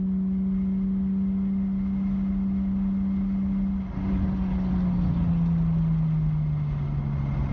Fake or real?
real